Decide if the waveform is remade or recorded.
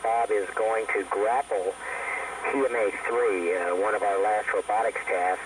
recorded